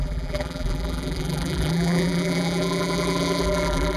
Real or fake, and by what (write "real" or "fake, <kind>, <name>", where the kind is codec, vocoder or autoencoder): fake, vocoder, BigVGAN v2